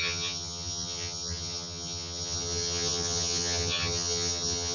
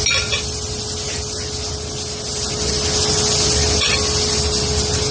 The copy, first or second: first